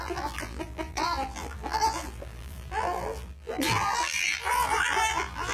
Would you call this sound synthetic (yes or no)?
yes